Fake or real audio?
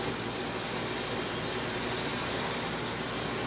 real